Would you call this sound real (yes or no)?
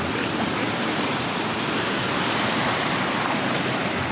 yes